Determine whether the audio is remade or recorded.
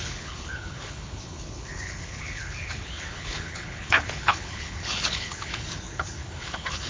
remade